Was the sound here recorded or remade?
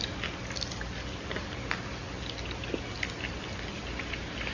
recorded